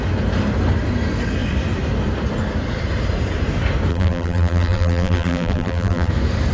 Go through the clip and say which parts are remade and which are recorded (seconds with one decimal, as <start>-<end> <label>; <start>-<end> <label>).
0.0-3.9 recorded; 3.9-6.1 remade; 6.1-6.5 recorded